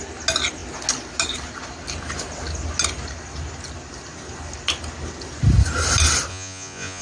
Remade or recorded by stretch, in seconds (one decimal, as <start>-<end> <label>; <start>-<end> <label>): 0.0-6.3 recorded; 6.3-7.0 remade